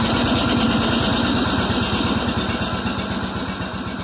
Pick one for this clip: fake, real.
real